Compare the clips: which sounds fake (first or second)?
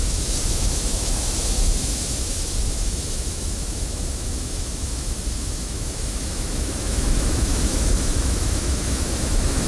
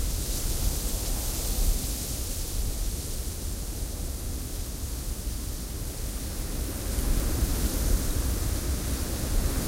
first